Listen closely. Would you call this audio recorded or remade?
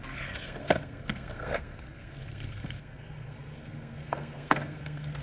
remade